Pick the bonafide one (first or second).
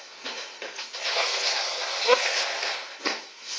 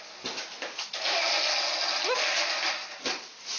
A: second